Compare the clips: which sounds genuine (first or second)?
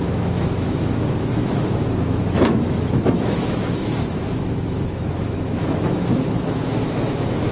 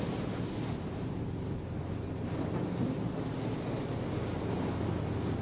second